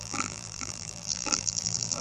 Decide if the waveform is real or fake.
fake